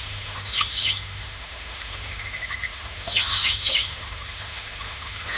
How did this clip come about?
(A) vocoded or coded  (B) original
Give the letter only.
A